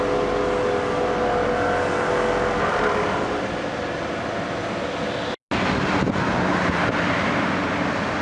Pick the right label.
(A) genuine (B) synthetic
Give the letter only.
A